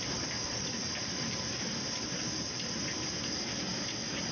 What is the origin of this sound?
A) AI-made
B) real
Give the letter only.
A